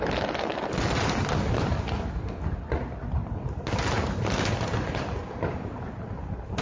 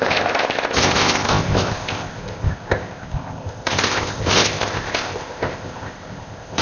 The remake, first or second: second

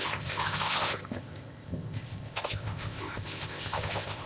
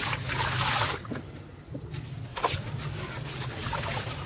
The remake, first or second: first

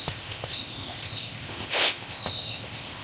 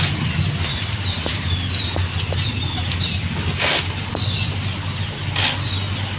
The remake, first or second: first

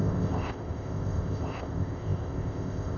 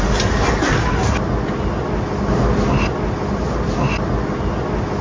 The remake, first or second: first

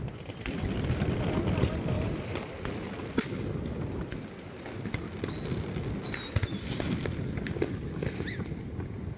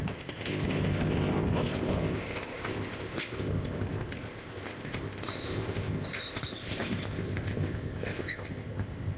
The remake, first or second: second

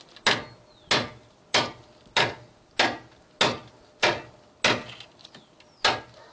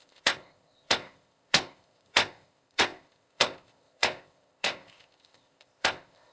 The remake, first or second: second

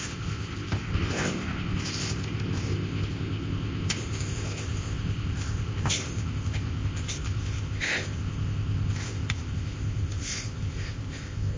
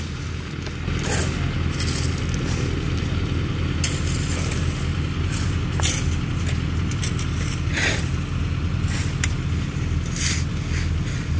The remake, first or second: first